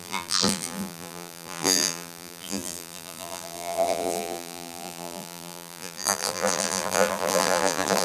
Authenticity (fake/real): fake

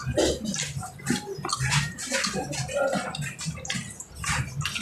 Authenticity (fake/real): real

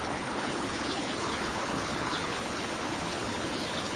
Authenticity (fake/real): fake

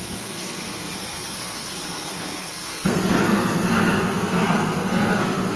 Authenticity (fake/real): fake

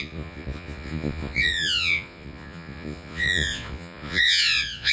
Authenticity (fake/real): fake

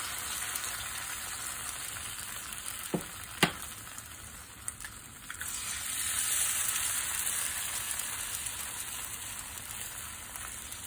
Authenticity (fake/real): real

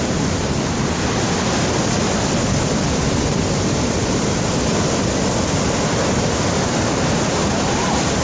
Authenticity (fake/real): fake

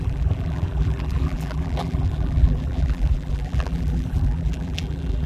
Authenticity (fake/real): fake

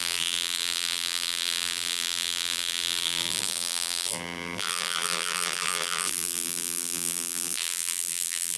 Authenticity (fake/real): fake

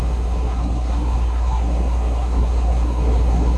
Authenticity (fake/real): fake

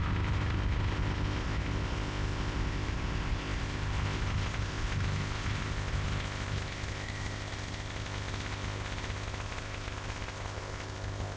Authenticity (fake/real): fake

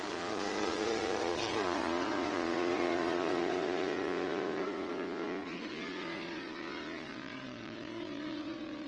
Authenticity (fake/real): fake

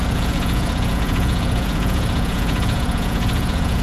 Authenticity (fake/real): fake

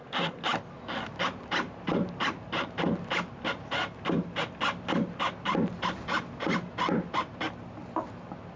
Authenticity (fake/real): real